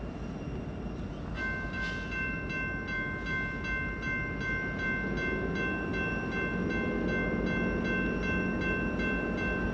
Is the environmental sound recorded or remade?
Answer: recorded